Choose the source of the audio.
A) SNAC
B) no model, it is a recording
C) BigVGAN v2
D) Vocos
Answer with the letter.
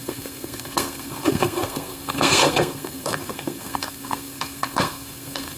A